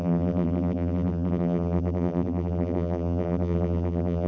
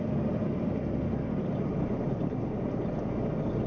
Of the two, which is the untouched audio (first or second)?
second